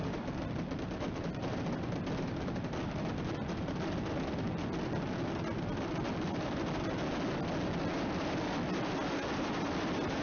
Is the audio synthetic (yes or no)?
no